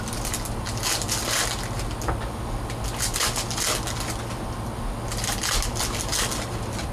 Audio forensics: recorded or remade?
recorded